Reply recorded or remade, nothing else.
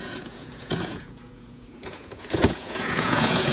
remade